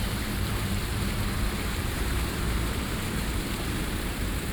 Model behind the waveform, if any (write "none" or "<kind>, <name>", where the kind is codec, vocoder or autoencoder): vocoder, BigVGAN v2